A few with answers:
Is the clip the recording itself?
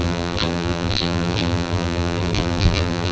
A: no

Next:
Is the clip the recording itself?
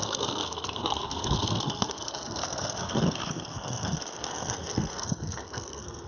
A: no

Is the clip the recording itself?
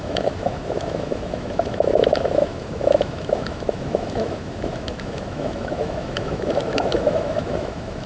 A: no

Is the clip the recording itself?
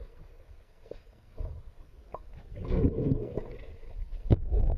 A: no